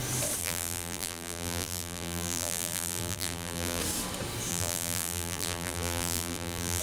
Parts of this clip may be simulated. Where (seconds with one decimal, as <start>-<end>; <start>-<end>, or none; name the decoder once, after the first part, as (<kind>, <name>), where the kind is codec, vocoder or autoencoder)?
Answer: 0.4-3.8 (vocoder, BigVGAN v2); 4.5-6.8